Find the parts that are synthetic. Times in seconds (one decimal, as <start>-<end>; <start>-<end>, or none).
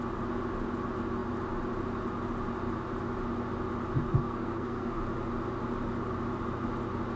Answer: 4.0-5.0